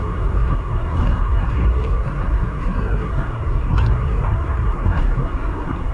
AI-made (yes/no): yes